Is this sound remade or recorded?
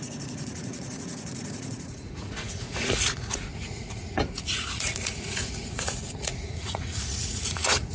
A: remade